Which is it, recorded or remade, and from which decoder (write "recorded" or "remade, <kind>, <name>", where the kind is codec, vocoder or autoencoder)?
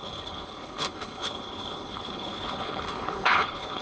remade, codec, HILCodec